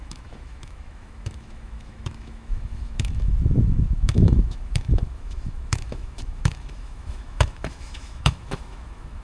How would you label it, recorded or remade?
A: remade